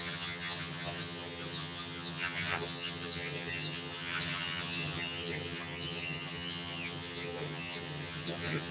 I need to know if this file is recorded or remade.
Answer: remade